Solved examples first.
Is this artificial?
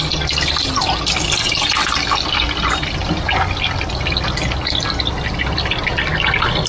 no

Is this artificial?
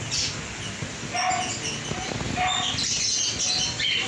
no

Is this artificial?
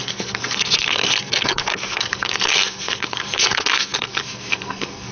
yes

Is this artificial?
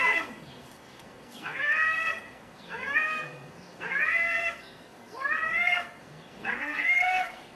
yes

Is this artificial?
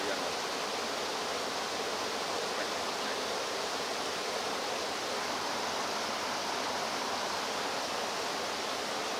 no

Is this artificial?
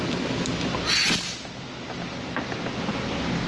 no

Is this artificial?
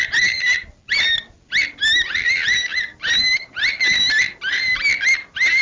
no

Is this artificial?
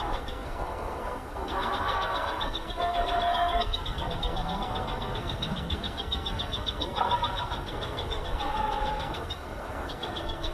yes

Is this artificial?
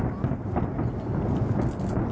no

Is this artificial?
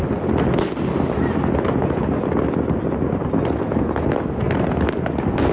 no